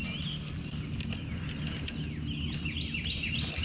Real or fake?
real